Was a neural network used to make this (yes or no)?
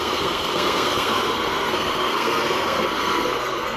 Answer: yes